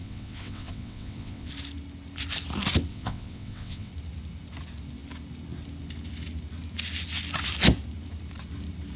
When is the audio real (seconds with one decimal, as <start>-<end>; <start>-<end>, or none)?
1.5-2.9; 3.9-9.0